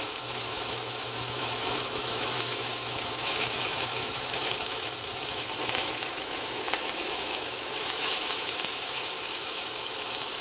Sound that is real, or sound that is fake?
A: fake